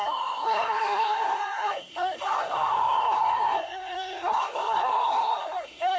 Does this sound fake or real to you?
fake